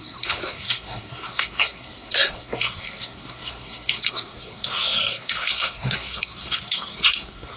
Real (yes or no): no